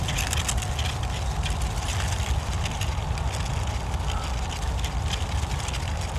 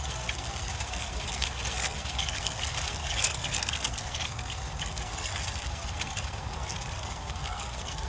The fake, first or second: second